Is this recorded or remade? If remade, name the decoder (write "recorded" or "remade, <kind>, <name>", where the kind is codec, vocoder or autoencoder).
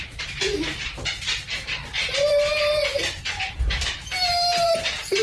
remade, vocoder, BigVGAN v2